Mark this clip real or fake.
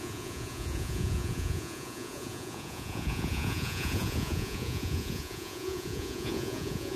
fake